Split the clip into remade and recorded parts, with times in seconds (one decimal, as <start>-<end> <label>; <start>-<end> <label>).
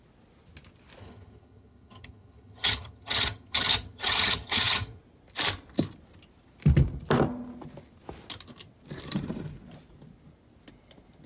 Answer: 0.0-1.0 recorded; 1.0-5.0 remade; 5.0-11.3 recorded